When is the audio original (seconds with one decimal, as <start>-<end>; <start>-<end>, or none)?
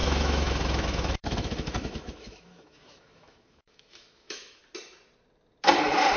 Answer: 4.6-6.2